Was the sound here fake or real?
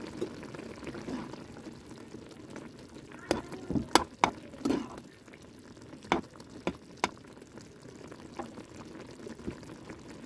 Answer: real